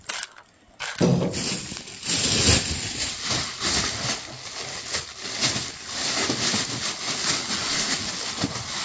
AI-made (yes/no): no